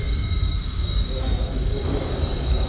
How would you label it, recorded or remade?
remade